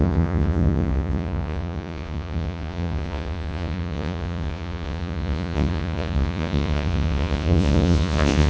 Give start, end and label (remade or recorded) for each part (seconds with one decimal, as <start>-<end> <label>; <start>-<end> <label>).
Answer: 0.0-8.5 remade